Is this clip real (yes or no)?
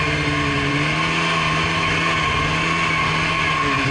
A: yes